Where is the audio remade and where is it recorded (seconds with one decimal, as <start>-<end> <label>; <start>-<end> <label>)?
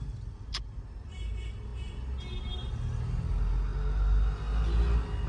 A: 0.0-5.3 recorded